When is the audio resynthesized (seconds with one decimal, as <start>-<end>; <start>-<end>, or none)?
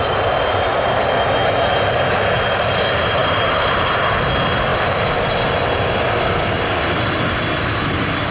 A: 3.2-3.9